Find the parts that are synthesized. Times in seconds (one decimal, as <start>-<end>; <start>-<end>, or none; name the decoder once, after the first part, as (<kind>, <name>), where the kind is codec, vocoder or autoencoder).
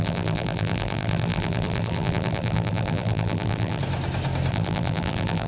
0.0-3.8 (vocoder, BigVGAN v2); 4.5-5.5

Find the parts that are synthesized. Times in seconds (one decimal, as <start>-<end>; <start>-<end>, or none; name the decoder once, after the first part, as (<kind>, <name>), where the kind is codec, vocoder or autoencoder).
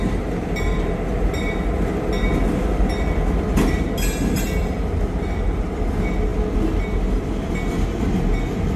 none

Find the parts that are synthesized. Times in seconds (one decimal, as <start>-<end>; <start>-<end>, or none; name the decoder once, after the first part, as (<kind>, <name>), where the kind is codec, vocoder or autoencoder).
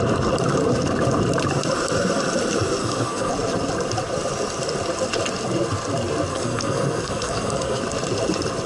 2.8-3.3 (codec, SNAC); 6.3-7.8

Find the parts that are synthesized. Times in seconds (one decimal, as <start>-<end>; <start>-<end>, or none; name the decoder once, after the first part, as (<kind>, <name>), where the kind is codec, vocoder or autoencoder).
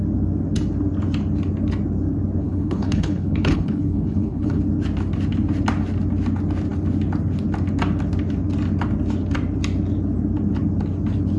2.4-4.6 (codec, HILCodec)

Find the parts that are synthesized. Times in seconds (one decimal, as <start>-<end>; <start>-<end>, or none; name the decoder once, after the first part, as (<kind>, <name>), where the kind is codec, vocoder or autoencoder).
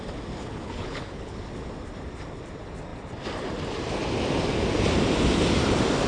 0.4-1.4 (codec, HILCodec)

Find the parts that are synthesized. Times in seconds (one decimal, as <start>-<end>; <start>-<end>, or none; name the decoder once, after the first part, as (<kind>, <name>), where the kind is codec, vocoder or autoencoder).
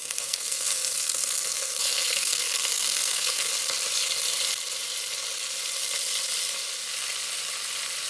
0.0-3.5 (codec, SNAC)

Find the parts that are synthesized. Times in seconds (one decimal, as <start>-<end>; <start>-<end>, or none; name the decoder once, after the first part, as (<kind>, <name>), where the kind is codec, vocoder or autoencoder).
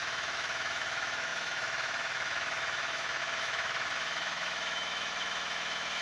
0.0-6.0 (autoencoder, DAC-VAE)